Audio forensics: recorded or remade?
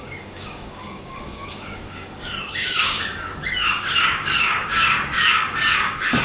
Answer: remade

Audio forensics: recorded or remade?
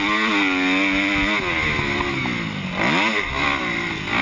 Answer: recorded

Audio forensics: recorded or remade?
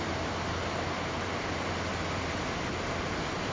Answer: recorded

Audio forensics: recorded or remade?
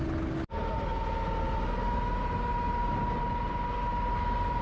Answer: recorded